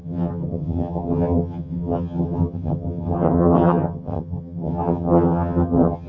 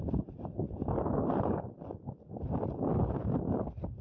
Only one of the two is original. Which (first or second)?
second